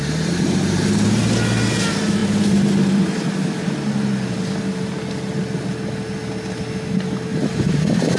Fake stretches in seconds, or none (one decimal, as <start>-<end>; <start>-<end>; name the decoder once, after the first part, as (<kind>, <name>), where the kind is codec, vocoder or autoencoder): 2.2-3.6 (vocoder, BigVGAN v2); 7.3-8.2